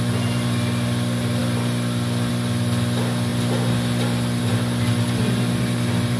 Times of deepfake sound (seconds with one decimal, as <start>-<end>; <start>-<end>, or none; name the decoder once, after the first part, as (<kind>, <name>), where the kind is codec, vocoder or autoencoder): none